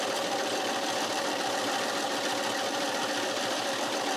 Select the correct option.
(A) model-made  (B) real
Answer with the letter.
B